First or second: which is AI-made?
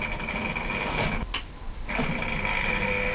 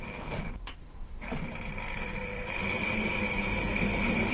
second